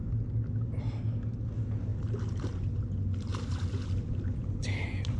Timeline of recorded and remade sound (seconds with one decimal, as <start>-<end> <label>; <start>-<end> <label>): 0.0-5.2 recorded

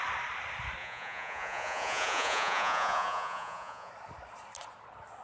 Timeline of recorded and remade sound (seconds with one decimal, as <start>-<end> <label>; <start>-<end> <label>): 0.0-0.8 recorded; 0.8-3.9 remade; 3.9-5.2 recorded

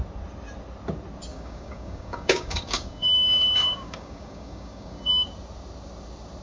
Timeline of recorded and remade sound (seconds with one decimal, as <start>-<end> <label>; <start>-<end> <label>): 0.0-1.3 recorded; 1.3-5.1 remade; 5.1-6.4 recorded

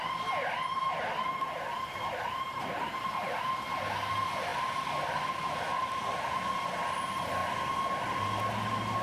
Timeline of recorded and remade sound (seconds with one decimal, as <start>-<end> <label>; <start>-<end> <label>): 0.0-0.7 recorded; 0.7-3.4 remade; 3.4-9.0 recorded

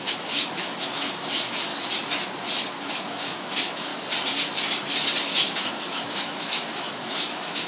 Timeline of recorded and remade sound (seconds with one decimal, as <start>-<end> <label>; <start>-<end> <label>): 0.0-1.7 remade; 1.7-2.9 recorded; 2.9-3.9 remade; 3.9-5.5 recorded; 5.5-7.7 remade

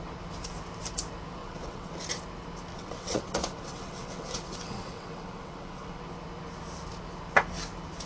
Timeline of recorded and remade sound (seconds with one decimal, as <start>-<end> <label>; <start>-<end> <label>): 0.0-1.4 recorded; 1.4-1.9 remade; 1.9-2.7 recorded; 2.7-6.0 remade; 6.0-8.1 recorded

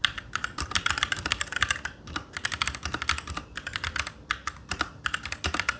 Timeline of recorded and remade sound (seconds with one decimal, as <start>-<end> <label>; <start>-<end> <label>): 0.0-2.3 remade; 2.3-5.8 recorded